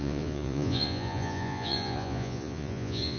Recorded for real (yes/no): no